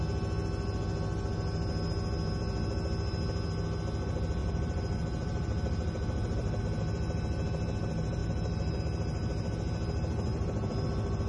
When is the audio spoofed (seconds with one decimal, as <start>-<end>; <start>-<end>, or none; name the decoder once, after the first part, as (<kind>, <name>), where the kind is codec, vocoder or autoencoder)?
4.4-6.6 (vocoder, BigVGAN v2); 8.2-8.8; 10.3-10.8